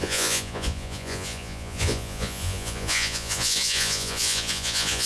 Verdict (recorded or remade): remade